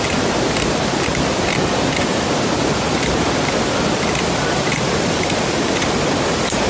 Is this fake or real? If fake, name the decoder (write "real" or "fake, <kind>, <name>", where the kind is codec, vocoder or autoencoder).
real